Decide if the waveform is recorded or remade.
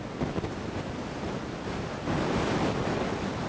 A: recorded